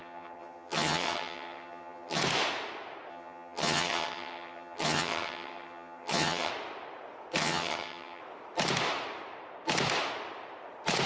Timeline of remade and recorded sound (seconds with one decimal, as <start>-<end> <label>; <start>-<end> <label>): 0.0-2.2 remade; 2.2-3.1 recorded; 3.1-6.5 remade; 6.5-7.4 recorded; 7.4-8.2 remade; 8.2-11.1 recorded